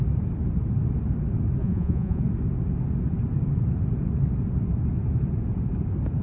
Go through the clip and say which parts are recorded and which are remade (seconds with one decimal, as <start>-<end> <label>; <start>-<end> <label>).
0.0-1.6 recorded; 1.6-2.2 remade; 2.2-6.2 recorded